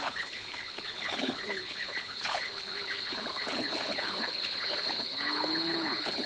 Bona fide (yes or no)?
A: no